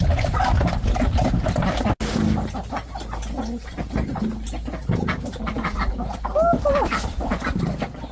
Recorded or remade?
recorded